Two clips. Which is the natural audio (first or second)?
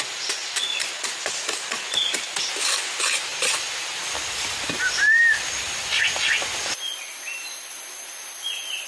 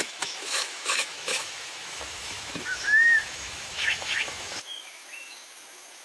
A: first